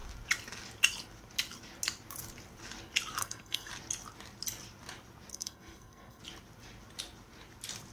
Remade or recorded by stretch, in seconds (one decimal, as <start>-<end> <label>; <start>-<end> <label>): 0.0-3.2 recorded; 3.2-3.7 remade; 3.7-5.3 recorded; 5.3-6.2 remade; 6.2-7.9 recorded